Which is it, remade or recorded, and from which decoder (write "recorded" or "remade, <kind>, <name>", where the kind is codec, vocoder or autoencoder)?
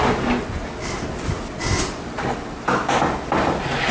recorded